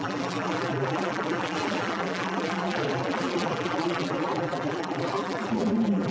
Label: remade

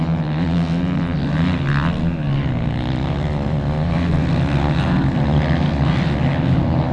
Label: recorded